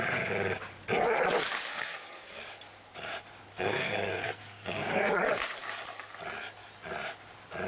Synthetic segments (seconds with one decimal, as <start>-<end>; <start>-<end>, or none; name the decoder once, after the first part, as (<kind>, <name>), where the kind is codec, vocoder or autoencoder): 1.7-2.4 (codec, SNAC); 3.5-5.1